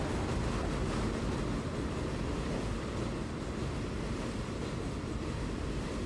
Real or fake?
real